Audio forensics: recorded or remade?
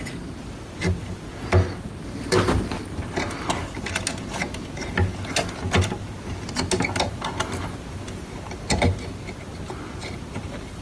recorded